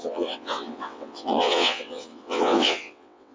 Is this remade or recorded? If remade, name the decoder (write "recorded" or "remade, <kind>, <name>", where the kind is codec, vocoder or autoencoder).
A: remade, vocoder, WaveNeXt